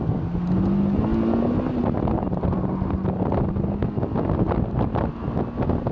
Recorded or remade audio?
recorded